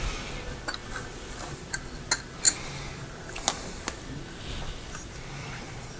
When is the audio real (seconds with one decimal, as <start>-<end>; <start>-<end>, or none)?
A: 0.0-5.4